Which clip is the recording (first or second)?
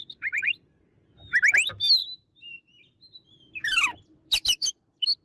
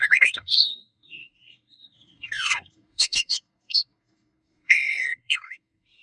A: first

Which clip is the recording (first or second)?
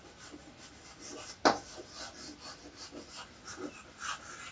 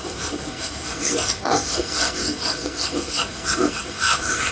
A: first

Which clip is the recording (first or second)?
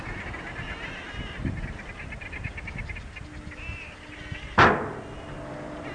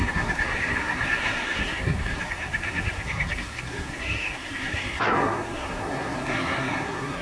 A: first